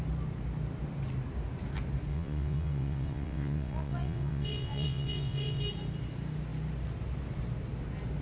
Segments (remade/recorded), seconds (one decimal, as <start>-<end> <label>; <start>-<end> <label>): 0.0-2.1 recorded; 2.1-5.6 remade; 5.6-8.2 recorded